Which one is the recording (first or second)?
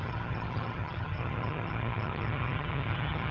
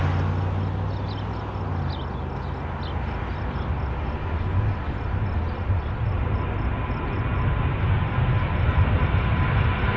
second